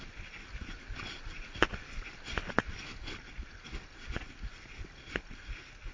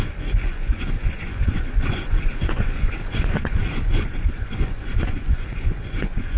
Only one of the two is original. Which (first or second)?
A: first